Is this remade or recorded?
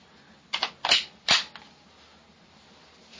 recorded